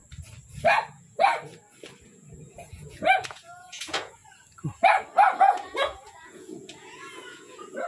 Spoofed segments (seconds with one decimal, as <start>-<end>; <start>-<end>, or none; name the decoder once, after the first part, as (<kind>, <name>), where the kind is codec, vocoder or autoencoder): 0.9-1.3 (vocoder, Vocos); 2.0-4.2; 5.4-7.9